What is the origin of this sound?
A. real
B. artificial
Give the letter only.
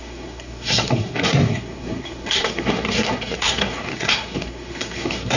B